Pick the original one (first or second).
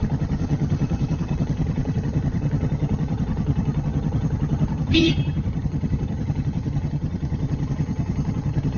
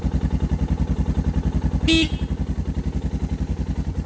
second